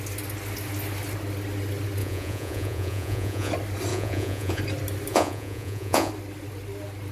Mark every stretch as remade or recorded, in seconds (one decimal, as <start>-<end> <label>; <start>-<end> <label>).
0.0-2.0 recorded; 2.0-3.5 remade; 3.5-3.9 recorded; 3.9-4.6 remade; 4.6-5.1 recorded; 5.1-6.1 remade; 6.1-7.1 recorded